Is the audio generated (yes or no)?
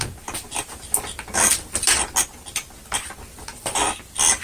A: no